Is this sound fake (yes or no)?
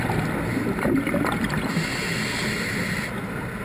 no